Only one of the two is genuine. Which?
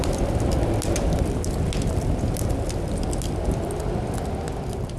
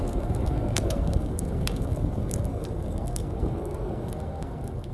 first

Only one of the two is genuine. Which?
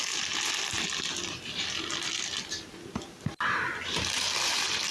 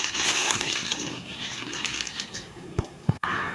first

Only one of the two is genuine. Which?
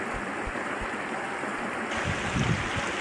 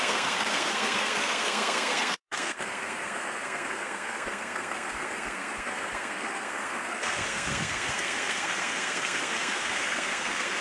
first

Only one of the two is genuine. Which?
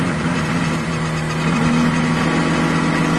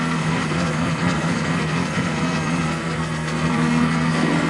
first